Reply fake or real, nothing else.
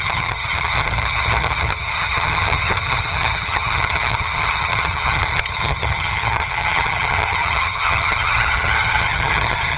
fake